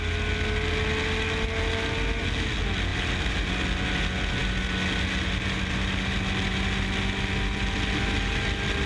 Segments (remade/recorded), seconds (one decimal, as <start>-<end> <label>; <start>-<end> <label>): 0.0-8.9 recorded